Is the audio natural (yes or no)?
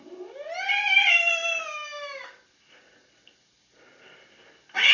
yes